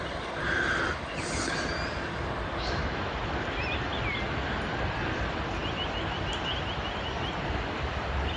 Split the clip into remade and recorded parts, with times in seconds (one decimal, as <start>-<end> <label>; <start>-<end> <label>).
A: 0.0-8.4 recorded